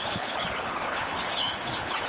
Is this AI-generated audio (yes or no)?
yes